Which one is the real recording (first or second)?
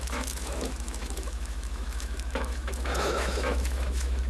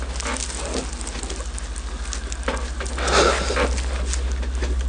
second